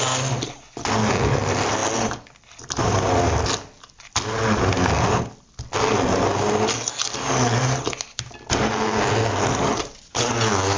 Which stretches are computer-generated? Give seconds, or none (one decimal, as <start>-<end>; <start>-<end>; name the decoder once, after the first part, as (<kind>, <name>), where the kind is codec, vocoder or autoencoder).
9.7-10.3 (vocoder, BigVGAN v2)